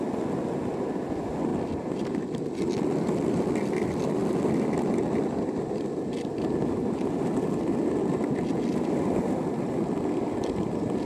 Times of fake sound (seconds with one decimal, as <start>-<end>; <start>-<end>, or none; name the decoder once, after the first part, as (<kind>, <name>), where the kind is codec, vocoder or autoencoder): none